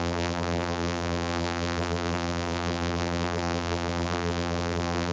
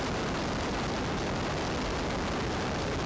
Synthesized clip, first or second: first